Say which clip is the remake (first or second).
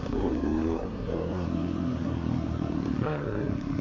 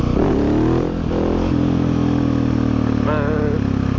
first